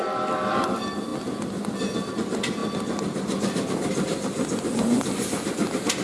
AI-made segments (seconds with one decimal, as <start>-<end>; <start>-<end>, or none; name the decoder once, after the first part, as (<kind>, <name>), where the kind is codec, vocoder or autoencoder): none